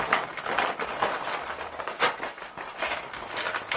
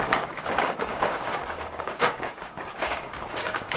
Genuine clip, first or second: first